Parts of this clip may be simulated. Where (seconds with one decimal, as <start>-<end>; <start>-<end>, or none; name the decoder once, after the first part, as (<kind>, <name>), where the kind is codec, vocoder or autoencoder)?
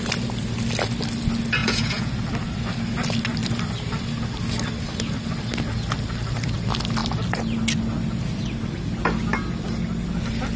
1.6-2.1 (vocoder, Vocos)